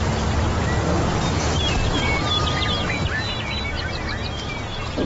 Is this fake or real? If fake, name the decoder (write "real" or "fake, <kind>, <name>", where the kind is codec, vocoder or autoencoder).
real